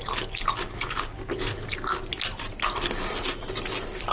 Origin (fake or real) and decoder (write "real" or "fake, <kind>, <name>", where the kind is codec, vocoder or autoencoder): real